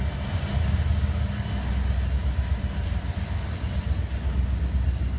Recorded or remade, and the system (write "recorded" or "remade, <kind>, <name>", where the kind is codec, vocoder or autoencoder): recorded